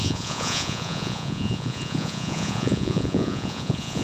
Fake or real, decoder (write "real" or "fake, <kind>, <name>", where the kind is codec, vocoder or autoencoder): fake, vocoder, Vocos